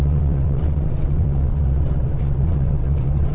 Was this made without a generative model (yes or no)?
no